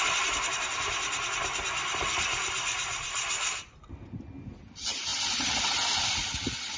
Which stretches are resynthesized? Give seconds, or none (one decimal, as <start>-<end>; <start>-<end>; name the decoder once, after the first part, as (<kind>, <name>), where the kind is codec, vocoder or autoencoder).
none